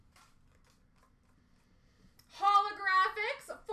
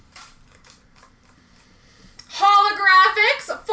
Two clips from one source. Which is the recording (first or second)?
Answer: first